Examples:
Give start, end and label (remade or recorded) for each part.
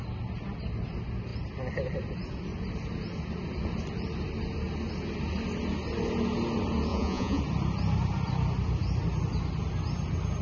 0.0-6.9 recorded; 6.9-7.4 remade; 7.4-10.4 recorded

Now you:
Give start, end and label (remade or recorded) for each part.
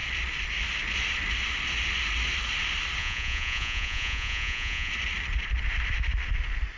0.0-3.0 recorded; 3.0-4.9 remade; 4.9-6.8 recorded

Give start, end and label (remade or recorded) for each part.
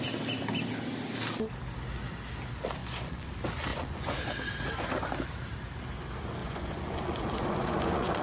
0.0-2.8 recorded; 2.8-3.3 remade; 3.3-3.7 recorded; 3.7-4.2 remade; 4.2-6.4 recorded; 6.4-8.2 remade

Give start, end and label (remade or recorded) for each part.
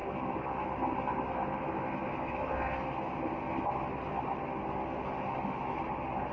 0.0-6.3 recorded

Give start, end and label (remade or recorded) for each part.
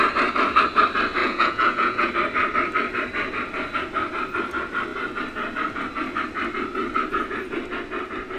0.0-1.2 recorded; 1.2-2.1 remade; 2.1-8.4 recorded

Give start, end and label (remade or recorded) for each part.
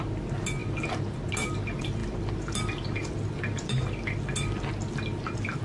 0.0-5.6 recorded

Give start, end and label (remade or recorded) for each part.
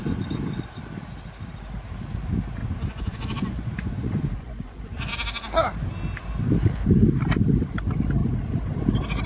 0.0-2.6 recorded; 2.6-5.1 remade; 5.1-9.3 recorded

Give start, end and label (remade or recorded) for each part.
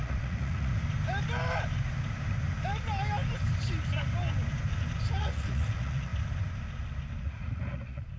0.0-0.8 remade; 0.8-5.2 recorded; 5.2-6.1 remade; 6.1-7.2 recorded; 7.2-8.2 remade